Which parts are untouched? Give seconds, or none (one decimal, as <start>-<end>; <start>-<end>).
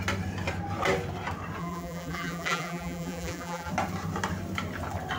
0.0-1.6; 3.7-5.2